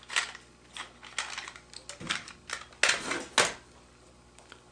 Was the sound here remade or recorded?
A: recorded